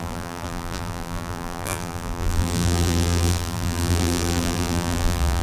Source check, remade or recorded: remade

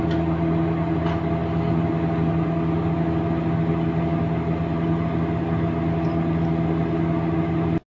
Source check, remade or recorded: recorded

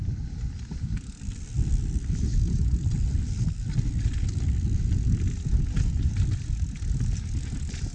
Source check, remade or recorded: recorded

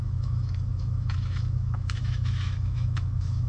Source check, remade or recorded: remade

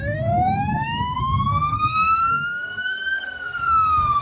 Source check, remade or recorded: remade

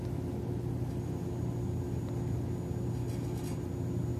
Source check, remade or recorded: recorded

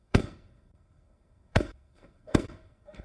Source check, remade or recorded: remade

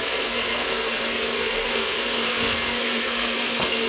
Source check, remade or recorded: remade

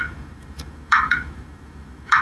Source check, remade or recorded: remade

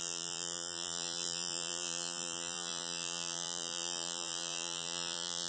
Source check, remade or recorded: remade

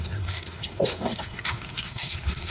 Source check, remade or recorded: remade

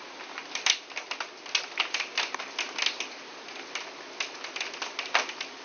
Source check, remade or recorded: recorded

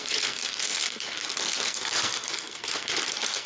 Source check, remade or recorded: remade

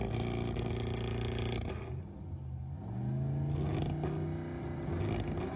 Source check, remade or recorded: recorded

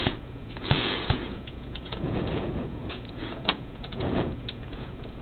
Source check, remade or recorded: remade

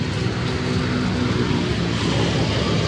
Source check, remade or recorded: recorded